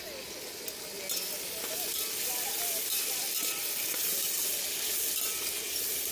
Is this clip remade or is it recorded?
recorded